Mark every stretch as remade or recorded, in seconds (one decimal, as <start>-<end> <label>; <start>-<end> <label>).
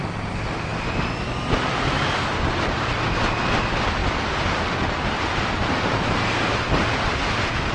0.0-7.7 recorded